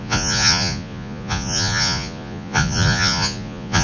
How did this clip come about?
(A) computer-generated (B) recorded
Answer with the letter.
A